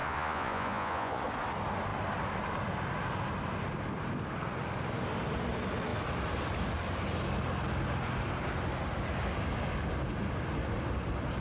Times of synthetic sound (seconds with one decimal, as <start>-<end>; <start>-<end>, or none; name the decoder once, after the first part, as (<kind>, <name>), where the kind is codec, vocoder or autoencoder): 0.0-1.2 (vocoder, Vocos)